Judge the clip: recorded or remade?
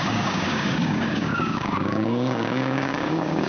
remade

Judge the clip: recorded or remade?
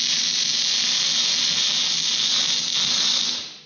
recorded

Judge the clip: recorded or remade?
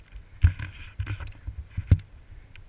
recorded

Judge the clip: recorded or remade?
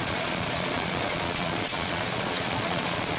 remade